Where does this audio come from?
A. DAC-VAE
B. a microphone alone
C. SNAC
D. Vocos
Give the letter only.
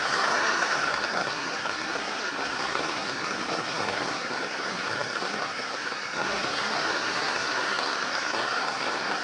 C